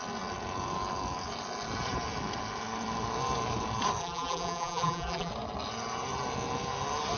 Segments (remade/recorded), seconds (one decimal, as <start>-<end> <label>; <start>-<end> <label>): 0.0-4.0 recorded; 4.0-5.3 remade; 5.3-7.2 recorded

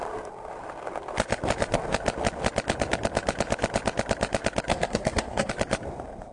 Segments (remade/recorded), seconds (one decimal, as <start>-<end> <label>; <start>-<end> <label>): 0.0-4.7 recorded; 4.7-5.5 remade; 5.5-6.3 recorded

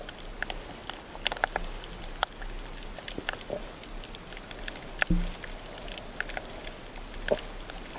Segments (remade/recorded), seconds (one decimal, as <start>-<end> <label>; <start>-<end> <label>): 0.0-8.0 recorded

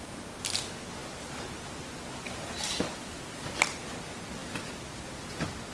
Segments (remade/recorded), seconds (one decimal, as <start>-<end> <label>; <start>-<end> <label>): 0.0-5.7 recorded